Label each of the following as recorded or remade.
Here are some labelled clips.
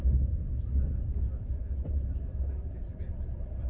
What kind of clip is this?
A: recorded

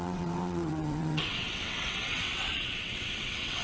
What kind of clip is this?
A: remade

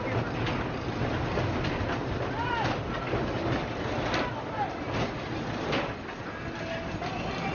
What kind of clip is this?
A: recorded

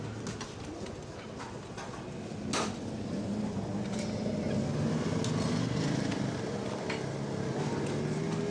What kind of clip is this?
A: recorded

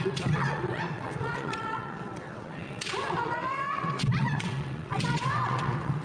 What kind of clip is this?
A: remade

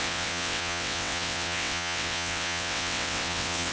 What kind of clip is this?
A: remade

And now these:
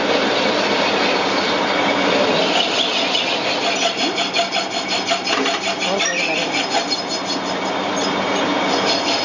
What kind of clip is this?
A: recorded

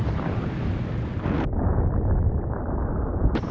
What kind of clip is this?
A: recorded